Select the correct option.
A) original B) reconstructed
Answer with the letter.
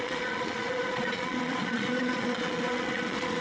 B